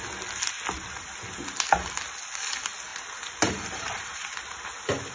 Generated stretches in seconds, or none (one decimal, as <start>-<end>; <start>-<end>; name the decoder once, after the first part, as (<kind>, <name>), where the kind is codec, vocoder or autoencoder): 2.9-5.1 (vocoder, BigVGAN v2)